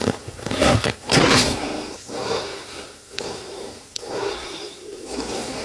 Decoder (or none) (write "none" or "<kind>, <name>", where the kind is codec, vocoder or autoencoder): codec, SNAC